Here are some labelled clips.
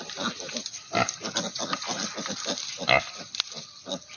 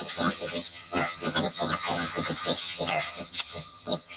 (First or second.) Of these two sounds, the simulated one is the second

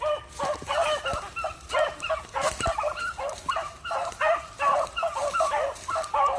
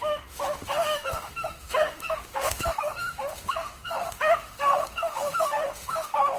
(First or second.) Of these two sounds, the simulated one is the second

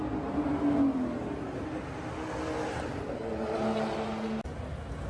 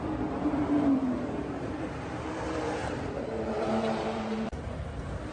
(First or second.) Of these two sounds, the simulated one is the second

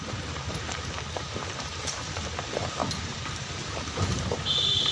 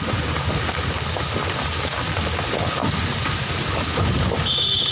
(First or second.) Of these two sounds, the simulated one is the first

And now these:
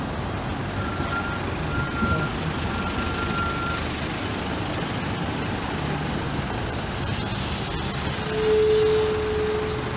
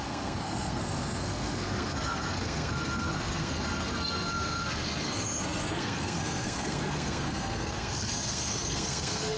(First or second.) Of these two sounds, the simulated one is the second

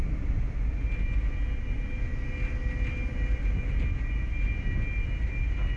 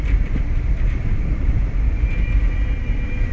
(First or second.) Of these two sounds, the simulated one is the second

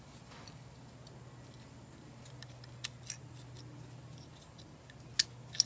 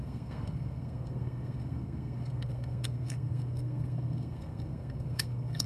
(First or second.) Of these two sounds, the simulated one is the second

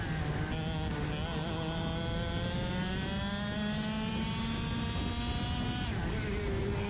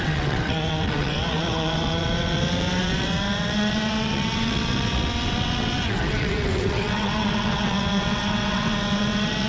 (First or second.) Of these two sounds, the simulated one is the second